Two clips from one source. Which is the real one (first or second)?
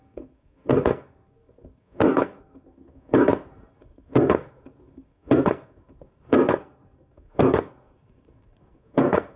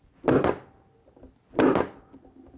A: second